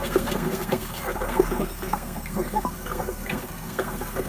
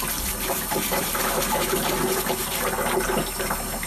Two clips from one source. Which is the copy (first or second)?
first